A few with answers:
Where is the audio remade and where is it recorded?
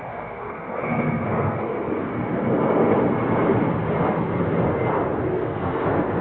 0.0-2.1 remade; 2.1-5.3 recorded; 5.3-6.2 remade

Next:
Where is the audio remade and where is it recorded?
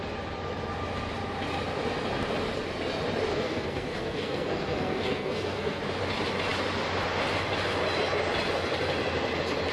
0.0-3.3 recorded; 3.3-5.8 remade; 5.8-9.7 recorded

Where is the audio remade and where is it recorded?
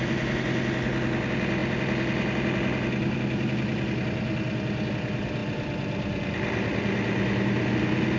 0.0-8.2 recorded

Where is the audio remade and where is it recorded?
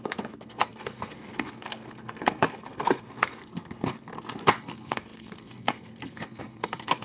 0.0-4.1 remade; 4.1-4.6 recorded; 4.6-7.0 remade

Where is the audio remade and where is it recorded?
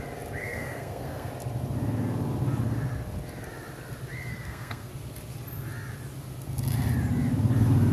0.0-0.4 recorded; 0.4-1.3 remade; 1.3-4.3 recorded; 4.3-4.9 remade; 4.9-7.9 recorded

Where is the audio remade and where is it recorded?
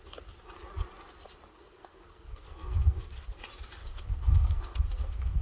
0.0-1.5 recorded; 1.5-3.4 remade; 3.4-3.8 recorded; 3.8-5.4 remade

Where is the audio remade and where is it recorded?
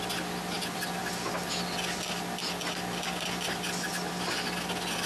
0.0-5.1 recorded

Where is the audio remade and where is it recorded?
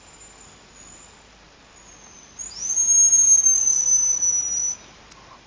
0.0-5.5 recorded